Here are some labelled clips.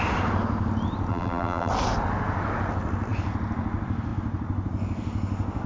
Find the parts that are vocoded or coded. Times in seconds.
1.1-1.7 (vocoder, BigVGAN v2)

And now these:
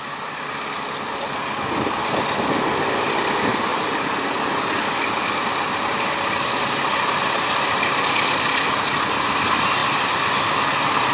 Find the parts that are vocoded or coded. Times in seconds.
3.7-5.0 (vocoder, BigVGAN v2); 9.8-10.3

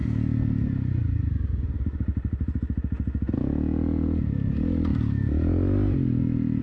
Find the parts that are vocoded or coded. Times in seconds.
2.1-2.8 (vocoder, BigVGAN v2)

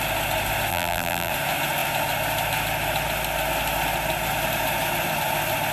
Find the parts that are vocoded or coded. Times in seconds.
0.7-1.3 (vocoder, BigVGAN v2)

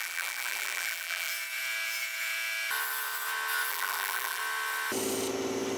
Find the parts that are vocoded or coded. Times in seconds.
0.0-1.3 (vocoder, BigVGAN v2); 3.7-4.4